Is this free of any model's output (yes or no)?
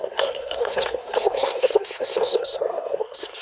no